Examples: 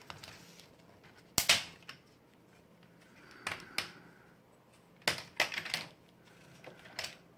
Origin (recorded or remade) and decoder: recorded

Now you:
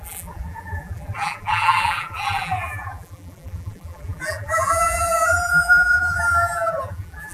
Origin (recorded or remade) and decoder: remade, vocoder, BigVGAN v2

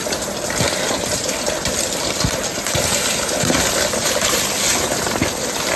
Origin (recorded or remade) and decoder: recorded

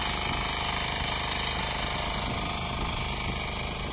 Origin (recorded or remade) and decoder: recorded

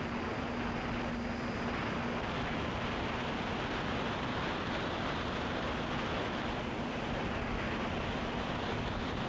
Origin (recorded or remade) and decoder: recorded